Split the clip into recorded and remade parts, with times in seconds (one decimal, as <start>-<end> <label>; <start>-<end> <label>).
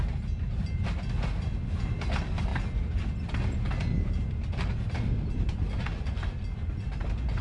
0.0-7.4 recorded